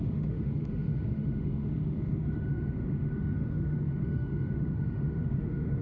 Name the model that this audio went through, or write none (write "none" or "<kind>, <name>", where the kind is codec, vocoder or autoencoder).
autoencoder, DAC-VAE